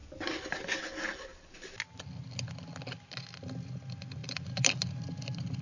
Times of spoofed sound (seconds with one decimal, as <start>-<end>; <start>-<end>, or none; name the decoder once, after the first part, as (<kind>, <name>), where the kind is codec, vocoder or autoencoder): none